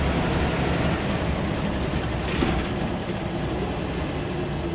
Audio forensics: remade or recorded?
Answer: recorded